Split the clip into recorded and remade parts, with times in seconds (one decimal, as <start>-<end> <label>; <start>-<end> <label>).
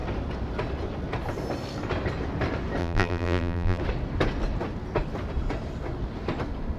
0.0-2.8 recorded; 2.8-3.8 remade; 3.8-6.8 recorded